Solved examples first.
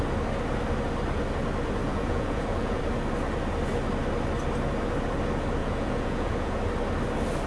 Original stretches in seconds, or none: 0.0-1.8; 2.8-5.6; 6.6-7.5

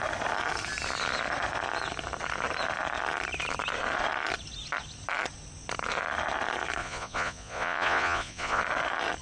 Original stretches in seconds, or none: 0.0-6.8; 8.6-9.2

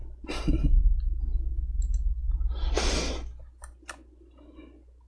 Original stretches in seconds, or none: 0.0-5.1

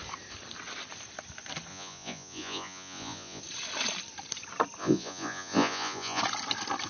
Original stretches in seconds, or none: 0.0-1.7; 3.4-4.8; 6.2-6.9

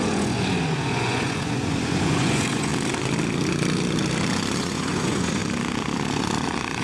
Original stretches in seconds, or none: 2.7-4.6; 5.4-6.8